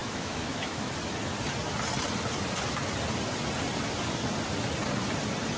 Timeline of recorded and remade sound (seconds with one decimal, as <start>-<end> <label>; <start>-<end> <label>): 0.0-0.9 remade; 0.9-5.6 recorded